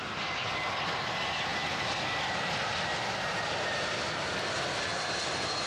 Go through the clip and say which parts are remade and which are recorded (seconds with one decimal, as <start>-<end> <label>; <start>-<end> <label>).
0.0-1.5 recorded; 1.5-4.9 remade; 4.9-5.7 recorded